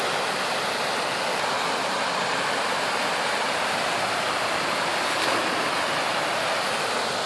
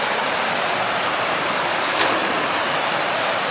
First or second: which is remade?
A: second